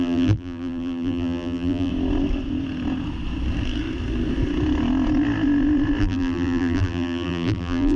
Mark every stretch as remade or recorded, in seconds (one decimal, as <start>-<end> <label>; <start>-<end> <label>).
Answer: 0.0-1.9 remade; 1.9-6.0 recorded; 6.0-8.0 remade